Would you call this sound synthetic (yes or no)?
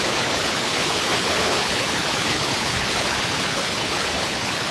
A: yes